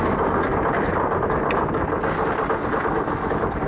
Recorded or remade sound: recorded